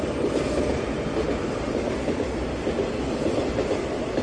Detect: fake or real real